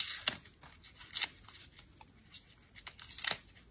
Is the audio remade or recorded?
recorded